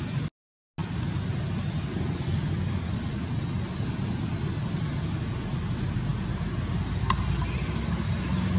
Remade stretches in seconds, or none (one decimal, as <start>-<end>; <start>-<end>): none